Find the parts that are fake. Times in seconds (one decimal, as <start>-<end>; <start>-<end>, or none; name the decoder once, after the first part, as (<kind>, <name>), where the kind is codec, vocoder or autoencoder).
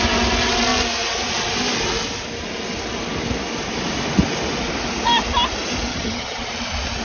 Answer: 5.9-6.5 (vocoder, HiFi-GAN)